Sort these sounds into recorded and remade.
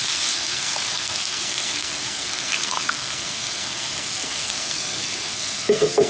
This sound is remade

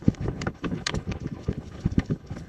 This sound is remade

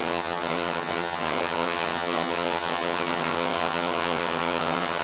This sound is remade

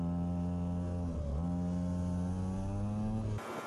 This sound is recorded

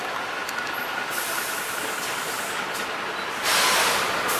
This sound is recorded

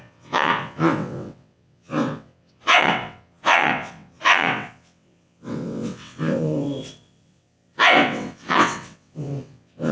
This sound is remade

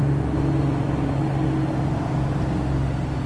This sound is recorded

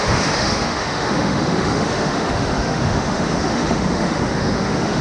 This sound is remade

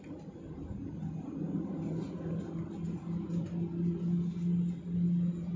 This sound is recorded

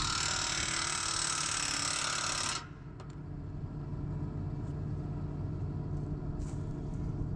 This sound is recorded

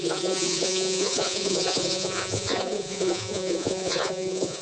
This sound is remade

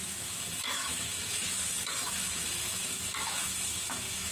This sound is remade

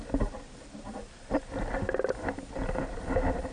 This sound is recorded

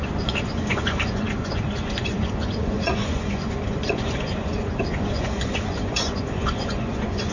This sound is remade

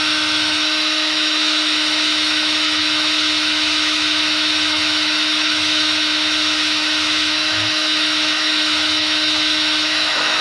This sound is remade